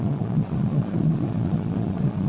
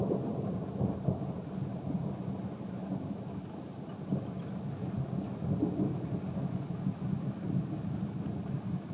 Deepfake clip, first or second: first